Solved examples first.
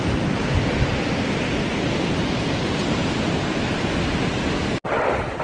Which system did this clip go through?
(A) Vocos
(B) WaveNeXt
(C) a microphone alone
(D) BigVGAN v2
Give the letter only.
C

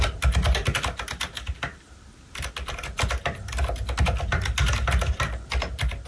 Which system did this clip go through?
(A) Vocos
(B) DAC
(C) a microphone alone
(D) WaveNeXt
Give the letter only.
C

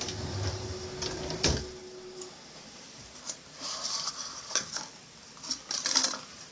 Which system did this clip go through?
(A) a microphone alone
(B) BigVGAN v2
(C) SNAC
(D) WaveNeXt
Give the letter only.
A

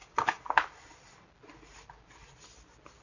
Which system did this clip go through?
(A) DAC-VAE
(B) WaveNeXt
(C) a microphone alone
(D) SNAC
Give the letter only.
C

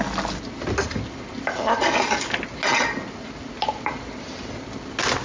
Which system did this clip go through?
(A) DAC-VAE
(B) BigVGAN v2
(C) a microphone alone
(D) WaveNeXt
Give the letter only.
C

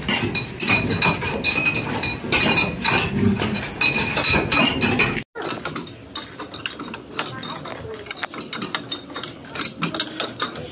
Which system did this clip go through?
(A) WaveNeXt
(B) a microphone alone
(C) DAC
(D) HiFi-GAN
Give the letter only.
B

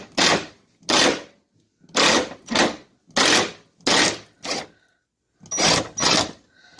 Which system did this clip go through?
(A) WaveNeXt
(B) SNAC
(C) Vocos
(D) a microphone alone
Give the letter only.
D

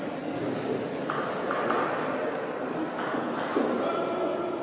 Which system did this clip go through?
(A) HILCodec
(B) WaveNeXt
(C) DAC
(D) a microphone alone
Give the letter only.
D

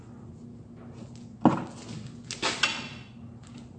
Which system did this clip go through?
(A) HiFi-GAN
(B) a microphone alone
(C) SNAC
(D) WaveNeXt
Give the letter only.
B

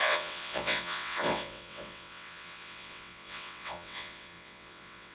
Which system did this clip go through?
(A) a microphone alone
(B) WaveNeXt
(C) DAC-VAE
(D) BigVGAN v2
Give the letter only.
B